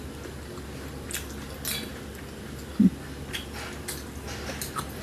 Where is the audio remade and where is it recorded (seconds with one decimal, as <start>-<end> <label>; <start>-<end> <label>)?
0.0-5.0 recorded